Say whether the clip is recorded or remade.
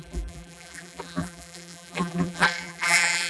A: remade